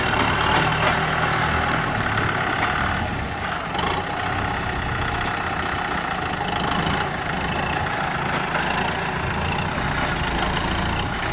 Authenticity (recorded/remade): recorded